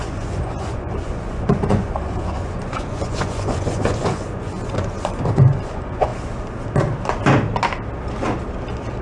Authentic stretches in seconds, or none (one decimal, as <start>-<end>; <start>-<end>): 6.1-9.0